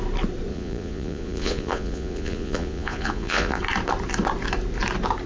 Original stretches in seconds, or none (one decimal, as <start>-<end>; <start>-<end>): 0.0-0.5; 3.6-5.3